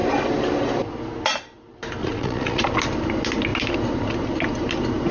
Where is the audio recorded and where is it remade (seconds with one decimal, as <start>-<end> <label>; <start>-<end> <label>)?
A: 0.0-2.0 recorded; 2.0-2.6 remade; 2.6-5.1 recorded